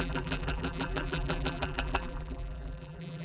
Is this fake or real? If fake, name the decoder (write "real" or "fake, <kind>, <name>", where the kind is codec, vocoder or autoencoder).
fake, vocoder, BigVGAN v2